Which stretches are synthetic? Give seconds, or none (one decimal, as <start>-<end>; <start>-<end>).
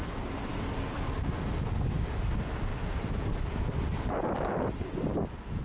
none